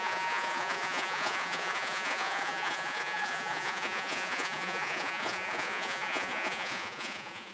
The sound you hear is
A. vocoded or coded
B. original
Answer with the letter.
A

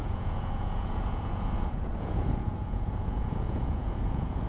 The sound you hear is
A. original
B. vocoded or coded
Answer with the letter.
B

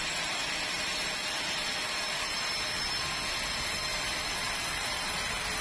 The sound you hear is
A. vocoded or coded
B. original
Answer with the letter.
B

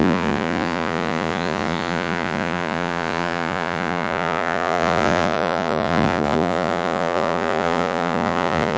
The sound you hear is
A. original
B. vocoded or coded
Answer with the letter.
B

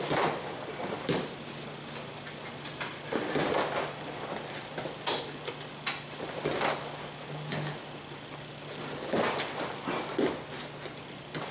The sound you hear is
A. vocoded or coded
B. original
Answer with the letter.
B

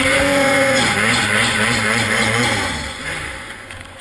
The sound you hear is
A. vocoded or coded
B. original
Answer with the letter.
A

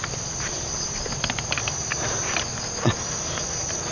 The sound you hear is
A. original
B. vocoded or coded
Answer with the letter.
A